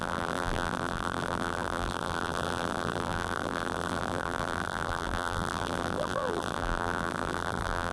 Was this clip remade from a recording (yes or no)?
yes